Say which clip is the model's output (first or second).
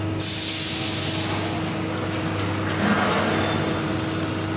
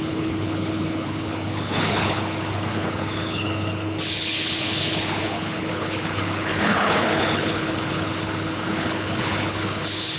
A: second